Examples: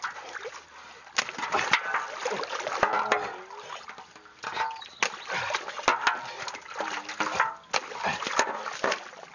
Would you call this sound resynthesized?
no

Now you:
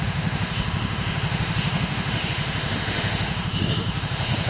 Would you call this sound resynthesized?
yes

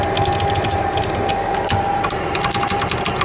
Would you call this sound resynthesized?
no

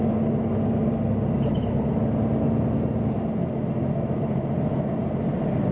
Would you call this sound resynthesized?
no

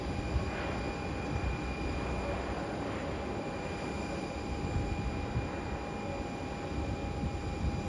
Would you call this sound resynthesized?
no